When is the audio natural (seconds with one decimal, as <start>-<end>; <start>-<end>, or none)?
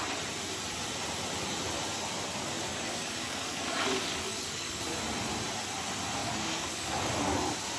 0.0-2.7; 4.8-6.2; 7.1-7.8